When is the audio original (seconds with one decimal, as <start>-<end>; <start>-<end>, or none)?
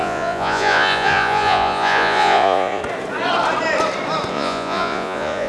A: 2.8-4.3